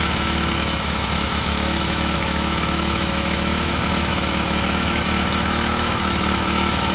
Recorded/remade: remade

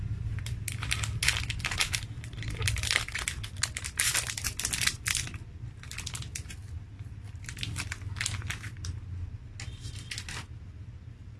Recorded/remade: recorded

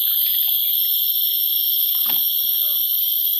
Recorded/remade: recorded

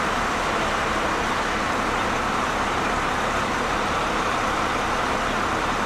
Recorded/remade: remade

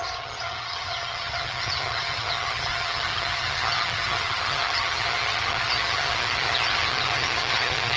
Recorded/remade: remade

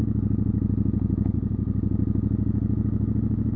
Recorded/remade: remade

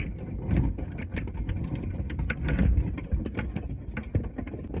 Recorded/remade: recorded